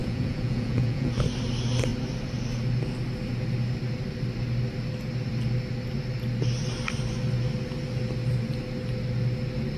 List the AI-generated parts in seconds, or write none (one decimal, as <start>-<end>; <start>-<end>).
0.0-1.1